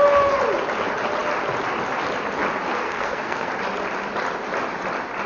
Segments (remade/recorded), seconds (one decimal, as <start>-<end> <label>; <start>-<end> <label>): 0.0-2.7 recorded; 2.7-3.5 remade; 3.5-5.3 recorded